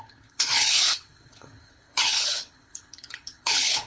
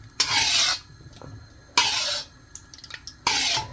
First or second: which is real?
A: second